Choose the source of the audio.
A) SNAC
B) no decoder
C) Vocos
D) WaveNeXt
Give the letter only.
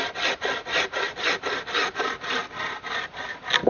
B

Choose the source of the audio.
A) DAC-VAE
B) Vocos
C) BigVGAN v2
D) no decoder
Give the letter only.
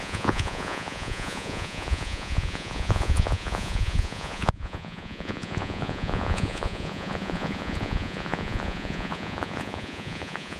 B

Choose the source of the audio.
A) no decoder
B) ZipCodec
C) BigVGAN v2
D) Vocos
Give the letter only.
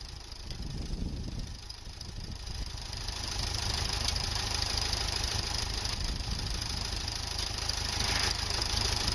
A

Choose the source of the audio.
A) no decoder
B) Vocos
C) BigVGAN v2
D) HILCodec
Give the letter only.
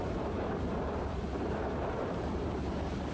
C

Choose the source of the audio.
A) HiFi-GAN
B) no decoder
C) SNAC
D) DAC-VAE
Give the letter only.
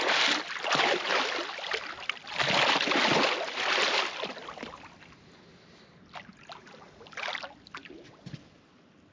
B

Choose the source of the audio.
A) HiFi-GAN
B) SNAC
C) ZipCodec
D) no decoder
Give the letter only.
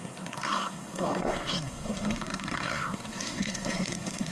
B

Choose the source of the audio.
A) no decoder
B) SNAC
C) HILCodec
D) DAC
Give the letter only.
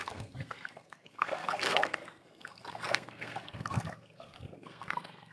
B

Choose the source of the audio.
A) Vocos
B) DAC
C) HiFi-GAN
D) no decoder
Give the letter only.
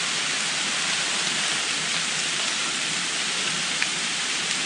D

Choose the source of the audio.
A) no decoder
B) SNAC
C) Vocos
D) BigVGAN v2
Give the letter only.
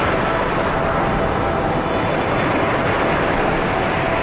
A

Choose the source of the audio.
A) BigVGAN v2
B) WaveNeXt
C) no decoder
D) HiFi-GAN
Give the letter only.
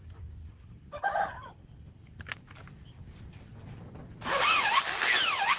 C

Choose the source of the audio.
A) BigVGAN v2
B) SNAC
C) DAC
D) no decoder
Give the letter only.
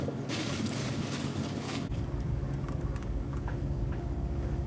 C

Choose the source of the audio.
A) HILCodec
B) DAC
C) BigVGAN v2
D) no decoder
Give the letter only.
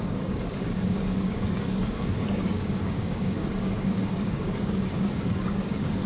B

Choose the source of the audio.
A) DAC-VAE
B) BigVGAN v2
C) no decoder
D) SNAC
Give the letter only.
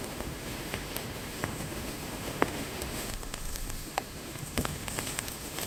A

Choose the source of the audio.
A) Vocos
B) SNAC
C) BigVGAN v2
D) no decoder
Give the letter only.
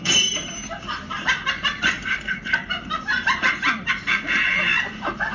C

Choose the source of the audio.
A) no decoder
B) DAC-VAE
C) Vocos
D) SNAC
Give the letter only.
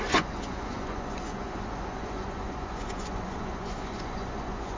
C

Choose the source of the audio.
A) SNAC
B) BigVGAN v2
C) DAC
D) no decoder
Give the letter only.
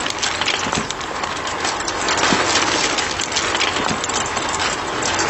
D